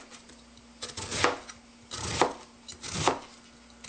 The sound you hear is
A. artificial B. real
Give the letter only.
B